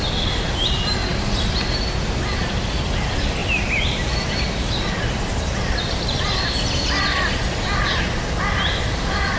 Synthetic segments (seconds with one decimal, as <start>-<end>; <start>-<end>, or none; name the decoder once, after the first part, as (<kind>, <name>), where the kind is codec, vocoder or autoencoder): none